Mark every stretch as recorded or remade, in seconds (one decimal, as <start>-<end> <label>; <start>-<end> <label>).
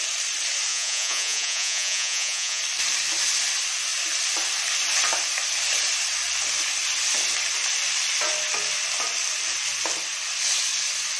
0.0-0.7 recorded; 0.7-2.6 remade; 2.6-11.2 recorded